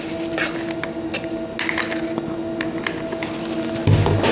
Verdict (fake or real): real